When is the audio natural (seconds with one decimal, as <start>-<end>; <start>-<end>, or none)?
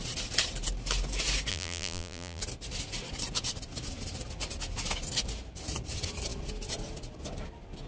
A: 0.0-1.5; 2.4-7.9